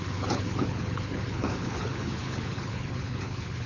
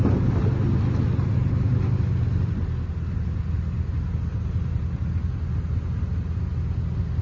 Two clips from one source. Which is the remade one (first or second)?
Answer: first